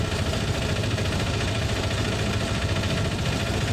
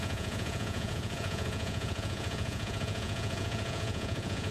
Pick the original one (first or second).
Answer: first